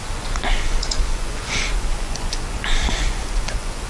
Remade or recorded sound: remade